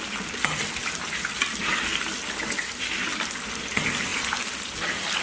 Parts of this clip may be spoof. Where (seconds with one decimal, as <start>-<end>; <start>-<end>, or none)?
none